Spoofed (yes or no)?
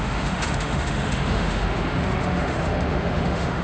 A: yes